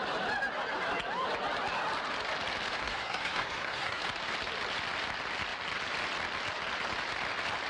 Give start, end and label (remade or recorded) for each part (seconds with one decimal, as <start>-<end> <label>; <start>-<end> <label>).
0.0-2.8 recorded; 2.8-4.0 remade; 4.0-7.7 recorded